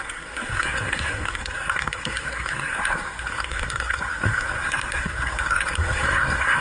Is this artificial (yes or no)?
yes